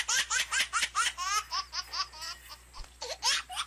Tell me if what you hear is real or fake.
real